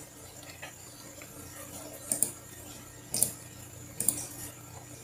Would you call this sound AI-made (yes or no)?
no